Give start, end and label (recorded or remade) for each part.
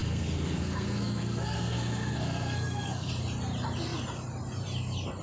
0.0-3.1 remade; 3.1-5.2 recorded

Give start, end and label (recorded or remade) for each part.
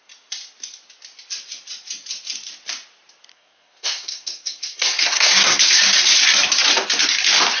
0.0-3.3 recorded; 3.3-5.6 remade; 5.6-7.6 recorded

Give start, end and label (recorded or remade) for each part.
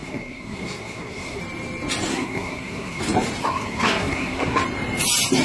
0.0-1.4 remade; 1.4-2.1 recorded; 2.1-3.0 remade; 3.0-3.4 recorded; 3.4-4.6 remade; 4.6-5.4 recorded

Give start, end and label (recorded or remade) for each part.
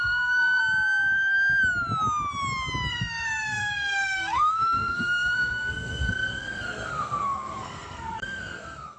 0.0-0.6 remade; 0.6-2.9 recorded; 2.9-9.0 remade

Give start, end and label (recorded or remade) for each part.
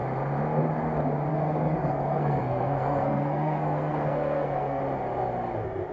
0.0-1.3 recorded; 1.3-4.8 remade; 4.8-5.9 recorded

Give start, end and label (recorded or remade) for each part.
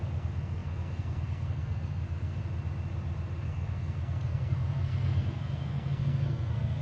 0.0-2.4 remade; 2.4-3.4 recorded; 3.4-6.8 remade